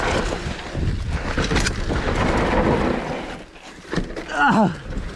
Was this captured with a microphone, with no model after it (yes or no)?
yes